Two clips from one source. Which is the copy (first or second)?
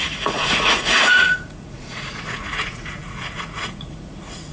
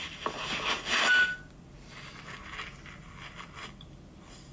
first